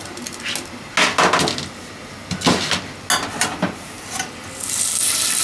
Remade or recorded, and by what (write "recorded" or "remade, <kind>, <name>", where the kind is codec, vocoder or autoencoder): recorded